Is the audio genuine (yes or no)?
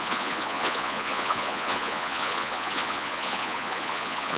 no